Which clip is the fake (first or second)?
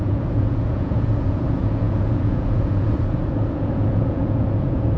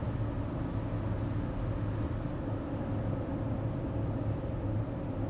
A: first